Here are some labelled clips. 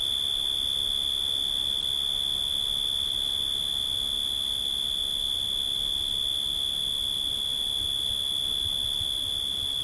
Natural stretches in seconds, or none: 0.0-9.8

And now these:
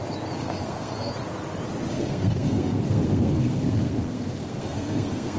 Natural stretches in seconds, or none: 0.0-0.4; 1.1-1.9

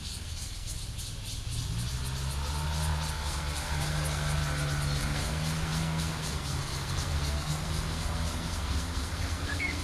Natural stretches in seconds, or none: 0.8-3.1; 4.4-5.0

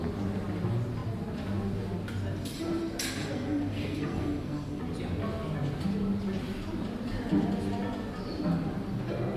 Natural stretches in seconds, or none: 0.0-3.2; 4.8-9.4

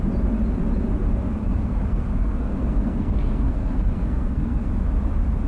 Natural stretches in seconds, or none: 0.0-1.4; 4.7-5.5

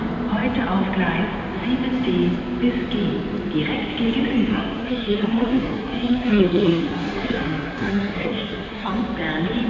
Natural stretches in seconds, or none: 0.0-4.5; 8.9-9.7